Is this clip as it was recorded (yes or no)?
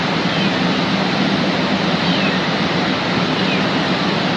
yes